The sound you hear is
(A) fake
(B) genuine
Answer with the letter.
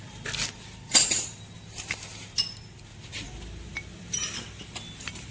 B